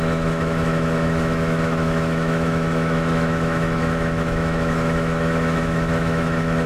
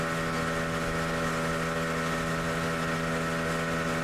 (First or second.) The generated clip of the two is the first